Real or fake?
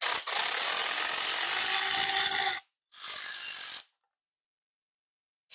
real